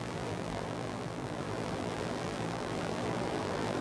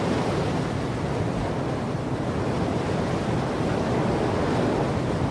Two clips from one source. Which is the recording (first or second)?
second